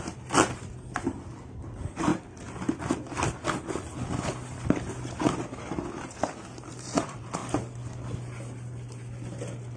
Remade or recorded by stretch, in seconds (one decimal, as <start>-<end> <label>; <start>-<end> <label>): 0.0-2.1 remade; 2.1-6.7 recorded; 6.7-7.4 remade; 7.4-9.8 recorded